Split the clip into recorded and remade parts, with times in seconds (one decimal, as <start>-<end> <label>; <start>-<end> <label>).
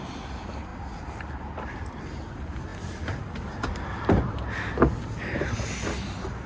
0.0-6.5 recorded